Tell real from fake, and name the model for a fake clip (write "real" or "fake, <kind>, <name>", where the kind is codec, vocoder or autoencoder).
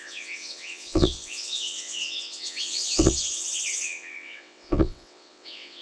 fake, vocoder, WaveNeXt